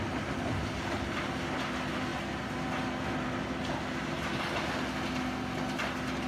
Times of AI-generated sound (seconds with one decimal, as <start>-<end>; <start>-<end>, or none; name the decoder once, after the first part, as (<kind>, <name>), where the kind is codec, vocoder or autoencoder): none